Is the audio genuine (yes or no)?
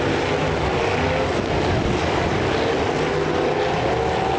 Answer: yes